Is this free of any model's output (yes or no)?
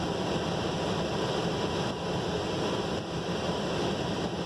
yes